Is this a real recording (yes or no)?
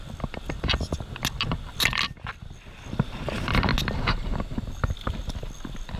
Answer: yes